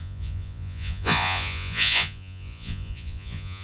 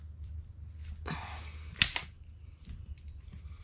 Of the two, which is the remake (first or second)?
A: first